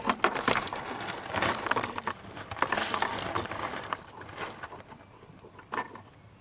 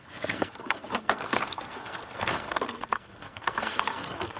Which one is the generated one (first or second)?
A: second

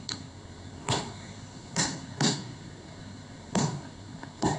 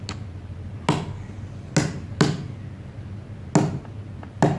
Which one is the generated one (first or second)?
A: first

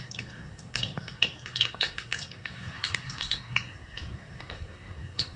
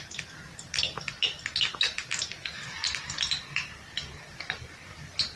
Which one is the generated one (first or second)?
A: first